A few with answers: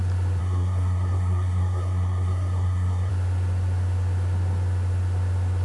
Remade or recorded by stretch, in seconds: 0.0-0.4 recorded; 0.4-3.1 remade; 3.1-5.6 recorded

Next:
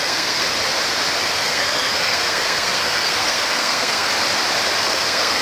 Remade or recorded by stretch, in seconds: 0.0-0.4 remade; 0.4-1.2 recorded; 1.2-4.1 remade; 4.1-4.8 recorded; 4.8-5.4 remade